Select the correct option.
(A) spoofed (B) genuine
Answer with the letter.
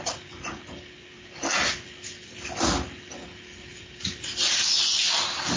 B